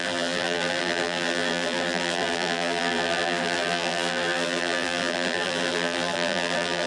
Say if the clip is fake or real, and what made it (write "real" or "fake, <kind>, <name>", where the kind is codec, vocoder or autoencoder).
fake, vocoder, BigVGAN v2